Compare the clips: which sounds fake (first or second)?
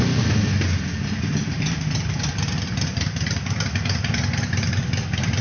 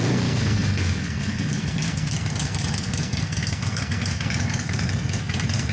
second